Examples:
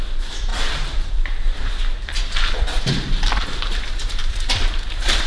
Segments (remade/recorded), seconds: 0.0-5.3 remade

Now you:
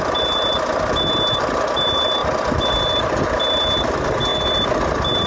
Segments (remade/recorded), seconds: 0.0-2.2 recorded; 2.2-2.7 remade; 2.7-5.3 recorded

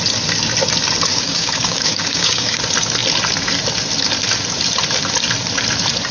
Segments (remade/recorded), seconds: 0.0-1.1 recorded; 1.1-2.6 remade; 2.6-6.1 recorded

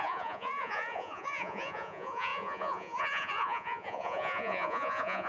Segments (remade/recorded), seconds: 0.0-5.3 remade

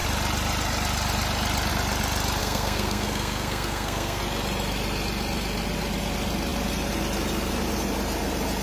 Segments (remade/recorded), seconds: 0.0-2.4 recorded; 2.4-4.2 remade; 4.2-8.6 recorded

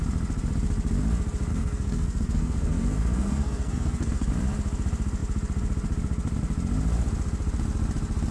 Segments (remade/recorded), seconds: 0.0-1.5 recorded; 1.5-4.3 remade; 4.3-8.3 recorded